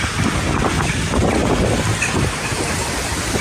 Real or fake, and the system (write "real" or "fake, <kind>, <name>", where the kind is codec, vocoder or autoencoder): real